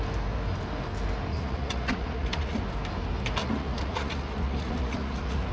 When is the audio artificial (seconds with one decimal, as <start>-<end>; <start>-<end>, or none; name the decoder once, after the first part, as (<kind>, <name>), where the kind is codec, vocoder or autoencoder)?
1.3-2.6 (vocoder, Vocos); 3.4-5.5

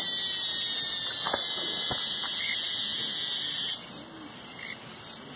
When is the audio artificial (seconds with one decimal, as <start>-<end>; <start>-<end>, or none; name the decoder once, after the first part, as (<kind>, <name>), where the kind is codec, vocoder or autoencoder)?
none